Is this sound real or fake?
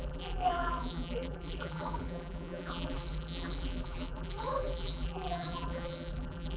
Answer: fake